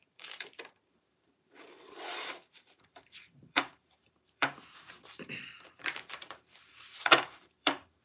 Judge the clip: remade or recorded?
remade